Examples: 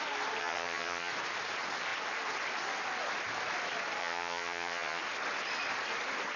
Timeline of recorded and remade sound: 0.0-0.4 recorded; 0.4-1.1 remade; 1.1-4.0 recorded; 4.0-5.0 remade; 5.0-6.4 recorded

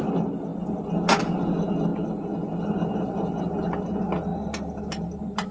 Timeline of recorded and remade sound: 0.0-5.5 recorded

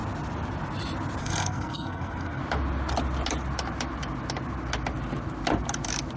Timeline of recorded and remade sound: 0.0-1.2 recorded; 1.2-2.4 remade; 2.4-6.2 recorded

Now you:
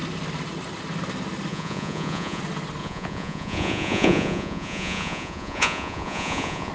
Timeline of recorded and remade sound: 0.0-1.5 recorded; 1.5-2.4 remade; 2.4-2.8 recorded; 2.8-6.7 remade

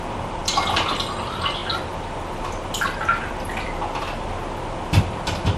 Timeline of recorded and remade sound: 0.0-5.6 recorded

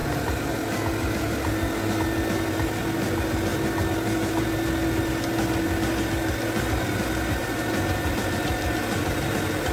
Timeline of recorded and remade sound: 0.0-9.7 recorded

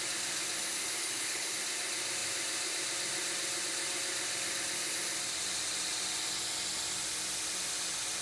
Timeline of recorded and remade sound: 0.0-1.0 recorded; 1.0-1.5 remade; 1.5-8.2 recorded